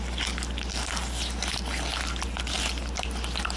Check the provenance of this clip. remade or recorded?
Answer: recorded